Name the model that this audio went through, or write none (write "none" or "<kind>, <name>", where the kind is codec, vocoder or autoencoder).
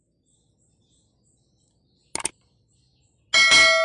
none